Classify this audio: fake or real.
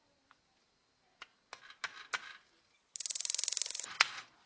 real